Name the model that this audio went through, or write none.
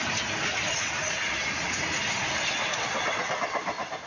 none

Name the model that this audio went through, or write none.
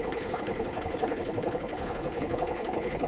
codec, HILCodec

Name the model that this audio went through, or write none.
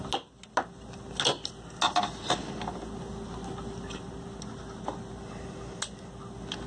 none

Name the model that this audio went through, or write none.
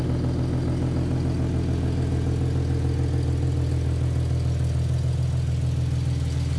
none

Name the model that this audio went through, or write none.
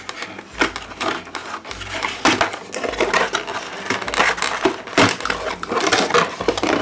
none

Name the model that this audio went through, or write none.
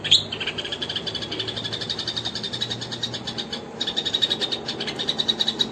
none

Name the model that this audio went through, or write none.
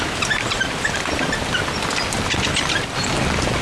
vocoder, BigVGAN v2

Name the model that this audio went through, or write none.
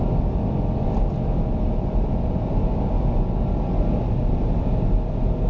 none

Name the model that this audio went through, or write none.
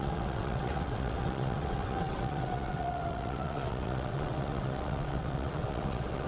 vocoder, WaveNeXt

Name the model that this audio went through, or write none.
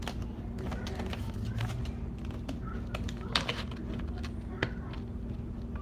none